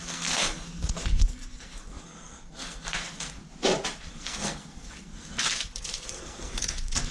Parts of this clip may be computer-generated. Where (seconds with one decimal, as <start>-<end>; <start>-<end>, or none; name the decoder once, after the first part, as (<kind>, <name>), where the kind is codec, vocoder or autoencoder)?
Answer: 0.0-3.4 (codec, SNAC); 4.1-7.1